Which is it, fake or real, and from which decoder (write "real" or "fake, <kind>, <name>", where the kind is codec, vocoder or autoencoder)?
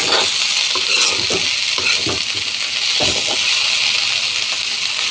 real